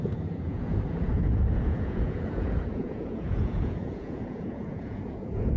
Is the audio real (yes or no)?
no